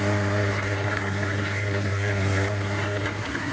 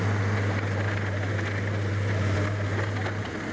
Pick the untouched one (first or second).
second